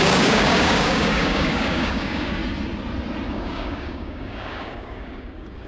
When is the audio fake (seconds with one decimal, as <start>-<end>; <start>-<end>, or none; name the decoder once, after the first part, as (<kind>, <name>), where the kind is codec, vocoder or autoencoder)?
0.0-2.4 (codec, DAC); 3.3-5.7